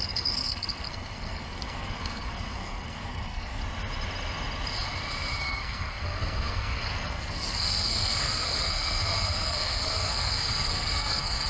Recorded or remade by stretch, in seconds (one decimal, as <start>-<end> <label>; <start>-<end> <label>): 0.0-3.6 remade; 3.6-5.4 recorded; 5.4-11.5 remade